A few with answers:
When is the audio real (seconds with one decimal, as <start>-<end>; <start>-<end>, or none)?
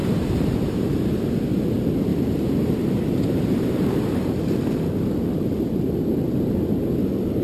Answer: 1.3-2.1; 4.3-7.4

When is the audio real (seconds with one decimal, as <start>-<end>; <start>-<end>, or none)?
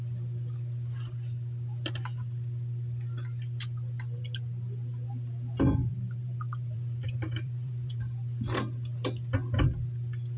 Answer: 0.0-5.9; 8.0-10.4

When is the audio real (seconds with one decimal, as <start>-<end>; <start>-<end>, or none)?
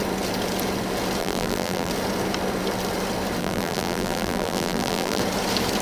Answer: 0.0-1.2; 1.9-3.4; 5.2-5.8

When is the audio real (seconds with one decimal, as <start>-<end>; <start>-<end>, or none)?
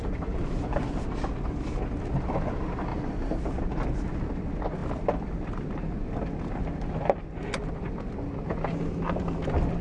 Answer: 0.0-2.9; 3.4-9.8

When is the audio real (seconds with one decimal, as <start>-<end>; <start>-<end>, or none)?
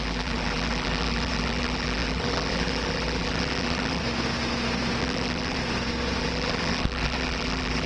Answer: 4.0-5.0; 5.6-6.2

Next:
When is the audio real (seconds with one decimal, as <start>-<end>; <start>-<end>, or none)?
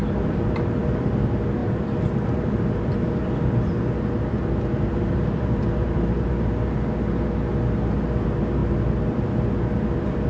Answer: 0.6-1.6; 6.3-10.3